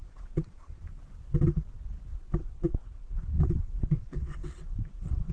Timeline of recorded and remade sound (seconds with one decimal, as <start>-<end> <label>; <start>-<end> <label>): 0.0-0.8 remade; 0.8-2.4 recorded; 2.4-5.3 remade